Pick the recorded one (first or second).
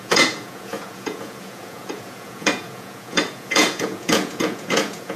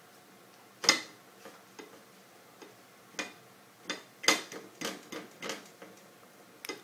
second